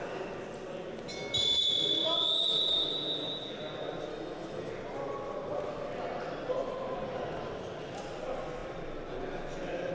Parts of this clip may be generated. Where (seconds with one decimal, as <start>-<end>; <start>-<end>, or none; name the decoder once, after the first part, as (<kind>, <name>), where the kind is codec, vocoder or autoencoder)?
4.1-4.7 (autoencoder, DAC-VAE)